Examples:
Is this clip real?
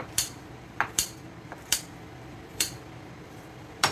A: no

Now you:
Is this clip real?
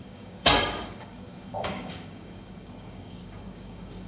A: no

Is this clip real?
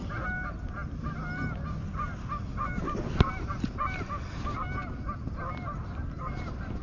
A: yes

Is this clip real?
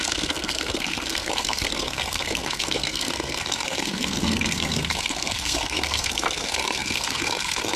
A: no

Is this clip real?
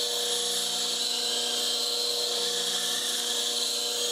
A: yes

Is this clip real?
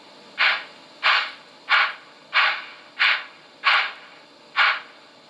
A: yes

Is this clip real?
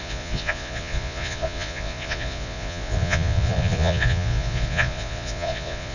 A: no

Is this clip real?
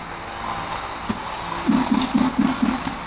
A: yes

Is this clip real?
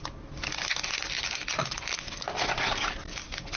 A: yes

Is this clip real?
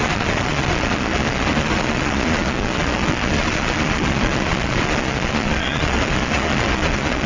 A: no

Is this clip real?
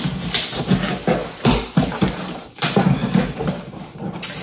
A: yes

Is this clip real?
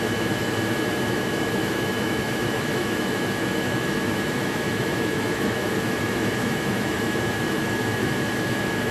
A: no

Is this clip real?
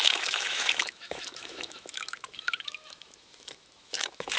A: no